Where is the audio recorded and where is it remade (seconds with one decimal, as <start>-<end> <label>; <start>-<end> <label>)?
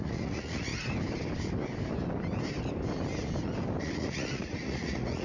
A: 0.0-0.7 remade; 0.7-3.8 recorded; 3.8-5.2 remade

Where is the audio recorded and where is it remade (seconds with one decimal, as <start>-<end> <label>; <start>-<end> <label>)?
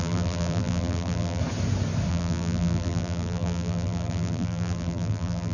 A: 0.0-1.4 remade; 1.4-2.1 recorded; 2.1-5.5 remade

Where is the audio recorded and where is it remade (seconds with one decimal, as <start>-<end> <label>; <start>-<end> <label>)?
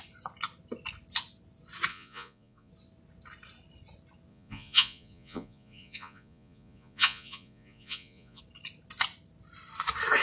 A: 0.0-1.9 recorded; 1.9-2.7 remade; 2.7-4.3 recorded; 4.3-8.4 remade; 8.4-10.2 recorded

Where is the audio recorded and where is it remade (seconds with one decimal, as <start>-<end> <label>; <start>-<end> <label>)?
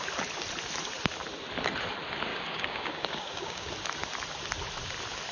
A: 0.0-2.3 recorded; 2.3-3.7 remade; 3.7-5.3 recorded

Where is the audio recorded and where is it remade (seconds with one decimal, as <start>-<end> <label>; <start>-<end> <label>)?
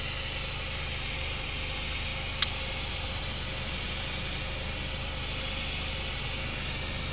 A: 0.0-7.1 recorded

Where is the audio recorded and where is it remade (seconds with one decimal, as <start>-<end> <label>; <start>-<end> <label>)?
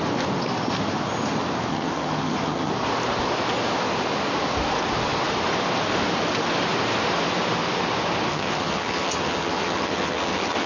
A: 0.0-1.7 recorded; 1.7-2.7 remade; 2.7-8.3 recorded; 8.3-10.7 remade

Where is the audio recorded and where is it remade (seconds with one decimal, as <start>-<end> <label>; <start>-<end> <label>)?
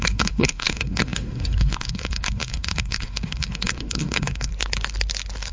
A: 0.0-4.5 remade; 4.5-5.5 recorded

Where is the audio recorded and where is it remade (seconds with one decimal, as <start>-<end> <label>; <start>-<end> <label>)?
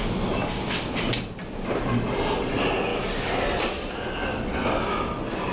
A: 0.0-4.3 recorded; 4.3-4.9 remade; 4.9-5.5 recorded